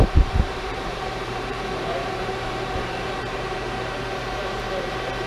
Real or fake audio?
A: fake